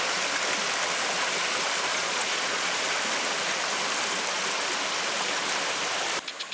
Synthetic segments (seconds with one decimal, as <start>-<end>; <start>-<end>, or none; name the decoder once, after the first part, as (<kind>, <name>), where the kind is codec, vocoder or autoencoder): 1.9-2.9 (vocoder, Vocos)